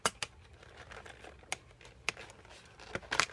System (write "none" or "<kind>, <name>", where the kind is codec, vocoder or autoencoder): none